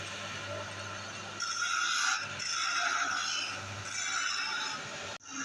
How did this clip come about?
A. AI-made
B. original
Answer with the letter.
B